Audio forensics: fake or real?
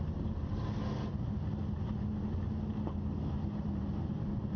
real